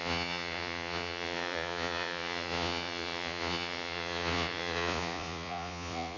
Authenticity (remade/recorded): remade